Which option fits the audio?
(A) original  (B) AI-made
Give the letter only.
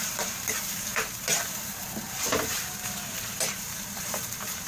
B